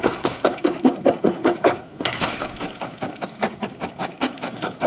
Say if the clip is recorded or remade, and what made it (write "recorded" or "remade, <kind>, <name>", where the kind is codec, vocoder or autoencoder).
remade, codec, SNAC